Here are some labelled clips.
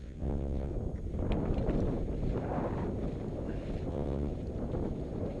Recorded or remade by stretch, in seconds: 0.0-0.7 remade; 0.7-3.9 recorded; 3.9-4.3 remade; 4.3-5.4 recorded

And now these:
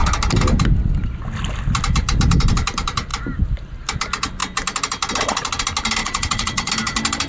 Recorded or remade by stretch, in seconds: 0.0-6.0 recorded; 6.0-6.7 remade; 6.7-7.3 recorded